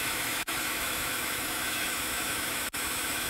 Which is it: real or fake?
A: fake